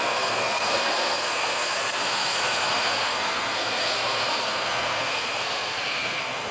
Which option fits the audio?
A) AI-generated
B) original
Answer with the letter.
A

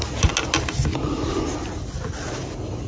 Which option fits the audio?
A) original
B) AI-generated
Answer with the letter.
A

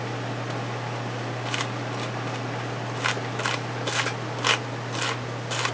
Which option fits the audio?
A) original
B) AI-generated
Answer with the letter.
A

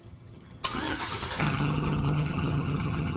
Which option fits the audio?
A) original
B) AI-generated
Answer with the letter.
B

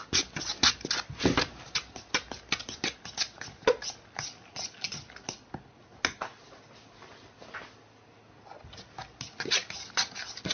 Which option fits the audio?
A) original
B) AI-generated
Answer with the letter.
A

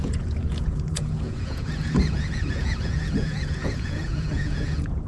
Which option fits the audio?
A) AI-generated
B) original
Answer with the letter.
A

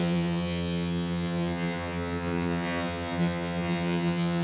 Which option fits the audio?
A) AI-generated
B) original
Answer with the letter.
A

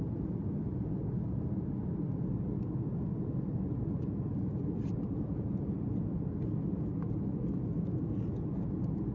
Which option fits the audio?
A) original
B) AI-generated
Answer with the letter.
A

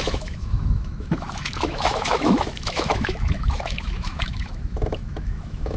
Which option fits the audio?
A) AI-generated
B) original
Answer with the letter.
A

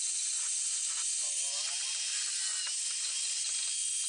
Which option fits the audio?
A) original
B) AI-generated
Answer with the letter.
A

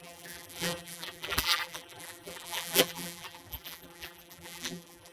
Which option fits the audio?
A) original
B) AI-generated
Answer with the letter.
B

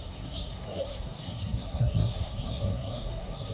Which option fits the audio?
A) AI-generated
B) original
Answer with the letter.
A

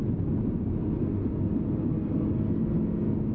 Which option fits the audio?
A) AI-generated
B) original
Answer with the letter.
B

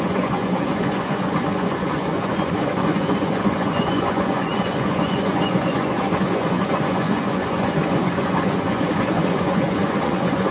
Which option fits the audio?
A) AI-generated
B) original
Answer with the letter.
A